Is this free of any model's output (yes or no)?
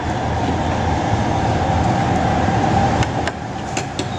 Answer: yes